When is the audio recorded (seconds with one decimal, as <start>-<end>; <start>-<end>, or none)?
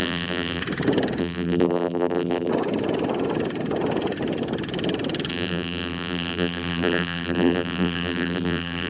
0.6-1.2; 2.5-5.3